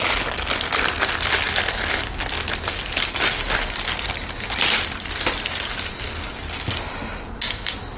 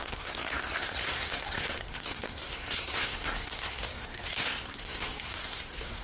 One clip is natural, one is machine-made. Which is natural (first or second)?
first